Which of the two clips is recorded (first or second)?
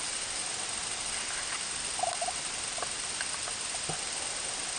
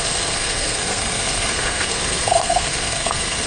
first